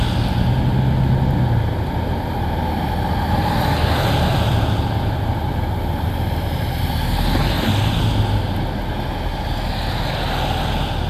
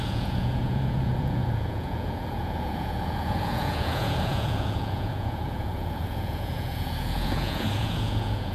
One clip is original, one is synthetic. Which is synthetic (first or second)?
second